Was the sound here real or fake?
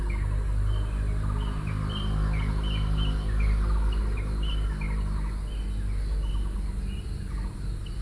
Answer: real